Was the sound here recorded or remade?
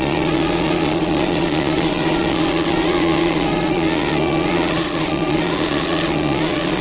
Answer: remade